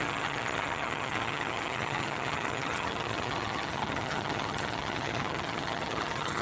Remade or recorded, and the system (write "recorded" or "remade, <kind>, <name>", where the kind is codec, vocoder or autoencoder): remade, vocoder, HiFi-GAN